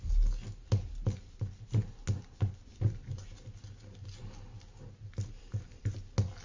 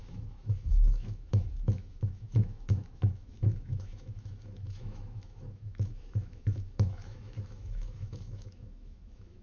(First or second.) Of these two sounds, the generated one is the second